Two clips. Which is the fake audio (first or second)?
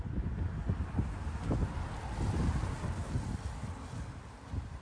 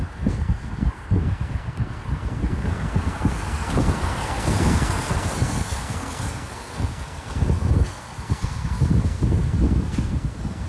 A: second